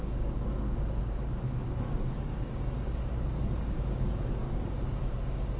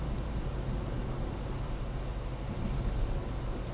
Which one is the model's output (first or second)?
first